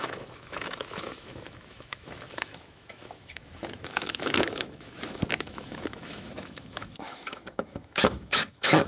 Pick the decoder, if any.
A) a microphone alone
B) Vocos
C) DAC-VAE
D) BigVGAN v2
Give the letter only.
C